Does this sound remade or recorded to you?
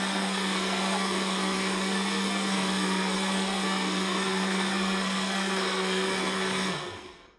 remade